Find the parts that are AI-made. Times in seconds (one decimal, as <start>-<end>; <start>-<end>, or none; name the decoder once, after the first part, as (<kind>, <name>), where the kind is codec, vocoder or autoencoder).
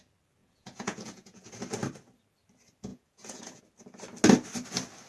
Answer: 0.4-1.5 (vocoder, Vocos); 2.9-3.6